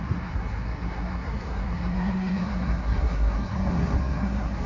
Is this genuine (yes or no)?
no